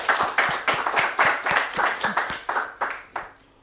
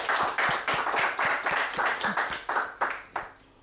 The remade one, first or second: first